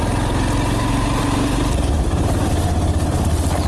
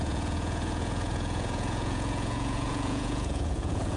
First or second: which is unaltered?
first